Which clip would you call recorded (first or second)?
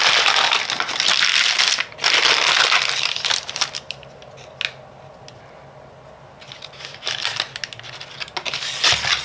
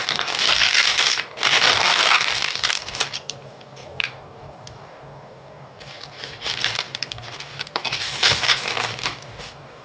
first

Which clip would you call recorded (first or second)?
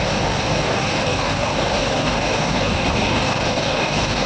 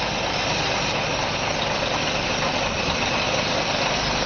second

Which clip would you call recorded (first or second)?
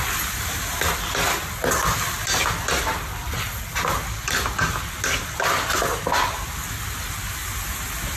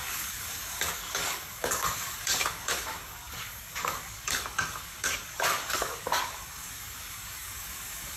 first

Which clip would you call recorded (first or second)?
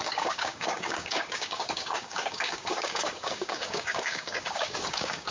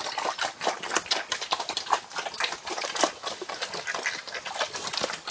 second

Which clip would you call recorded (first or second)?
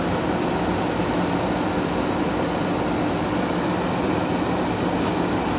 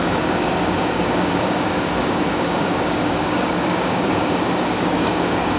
first